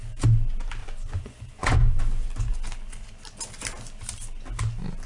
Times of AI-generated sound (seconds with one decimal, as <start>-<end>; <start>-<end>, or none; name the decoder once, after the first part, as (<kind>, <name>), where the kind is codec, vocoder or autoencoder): 0.8-2.0 (vocoder, Vocos)

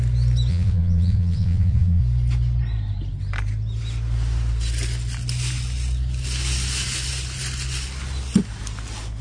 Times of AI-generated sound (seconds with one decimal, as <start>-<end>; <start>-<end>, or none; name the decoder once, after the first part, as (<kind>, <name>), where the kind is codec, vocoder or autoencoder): 0.5-2.0 (vocoder, Vocos)

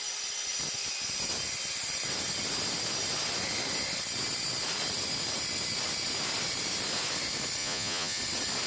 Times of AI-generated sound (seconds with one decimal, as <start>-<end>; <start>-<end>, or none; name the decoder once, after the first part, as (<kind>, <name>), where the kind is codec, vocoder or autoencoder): 7.6-8.2 (vocoder, Vocos)

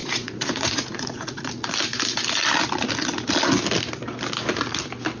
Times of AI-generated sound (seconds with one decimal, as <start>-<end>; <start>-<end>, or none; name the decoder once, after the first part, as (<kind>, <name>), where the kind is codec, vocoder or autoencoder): 0.0-1.5 (vocoder, Vocos)